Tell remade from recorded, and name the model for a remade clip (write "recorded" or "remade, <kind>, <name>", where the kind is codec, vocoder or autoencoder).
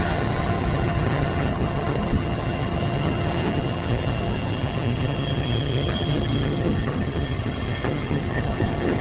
remade, vocoder, HiFi-GAN